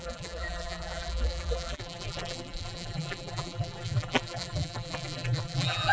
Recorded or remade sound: remade